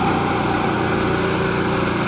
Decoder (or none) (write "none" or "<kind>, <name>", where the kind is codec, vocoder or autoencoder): none